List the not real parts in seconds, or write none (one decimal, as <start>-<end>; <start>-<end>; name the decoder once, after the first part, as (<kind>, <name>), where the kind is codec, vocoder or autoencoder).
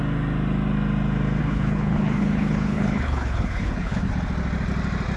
1.4-4.1 (codec, HILCodec)